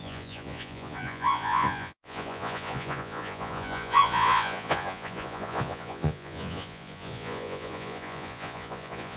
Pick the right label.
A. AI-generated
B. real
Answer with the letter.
A